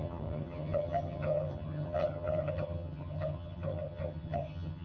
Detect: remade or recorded remade